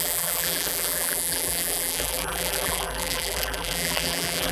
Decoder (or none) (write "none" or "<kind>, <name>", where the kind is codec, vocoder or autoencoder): vocoder, BigVGAN v2